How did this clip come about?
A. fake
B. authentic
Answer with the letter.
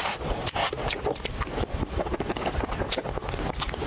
B